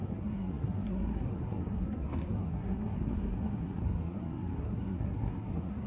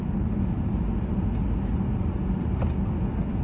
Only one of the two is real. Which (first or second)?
second